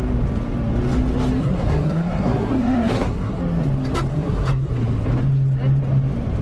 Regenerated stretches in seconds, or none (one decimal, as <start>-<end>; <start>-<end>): 1.4-3.4; 4.1-4.8